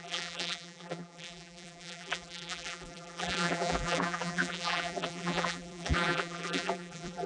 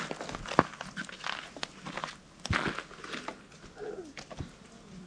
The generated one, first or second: first